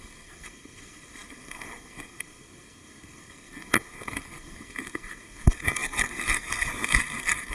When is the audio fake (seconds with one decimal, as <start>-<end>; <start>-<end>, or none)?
0.0-7.5

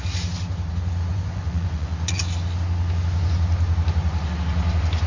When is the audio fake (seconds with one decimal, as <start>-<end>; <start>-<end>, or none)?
1.1-2.2

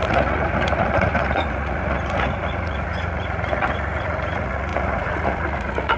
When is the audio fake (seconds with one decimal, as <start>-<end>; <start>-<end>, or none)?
0.0-6.0

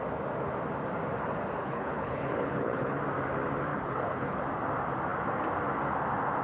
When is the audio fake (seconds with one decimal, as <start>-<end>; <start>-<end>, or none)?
1.6-3.0; 3.7-4.4

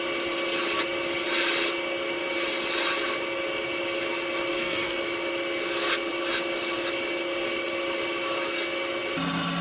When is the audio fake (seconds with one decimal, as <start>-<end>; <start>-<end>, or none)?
4.5-5.0

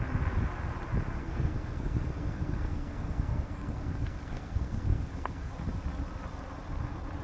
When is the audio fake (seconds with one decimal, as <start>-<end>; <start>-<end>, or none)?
1.2-5.5